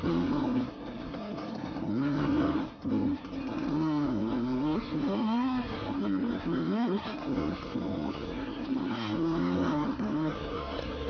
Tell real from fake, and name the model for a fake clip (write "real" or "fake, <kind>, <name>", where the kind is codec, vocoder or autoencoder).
fake, codec, SNAC